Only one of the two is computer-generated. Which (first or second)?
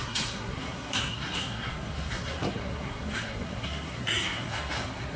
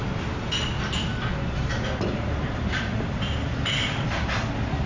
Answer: first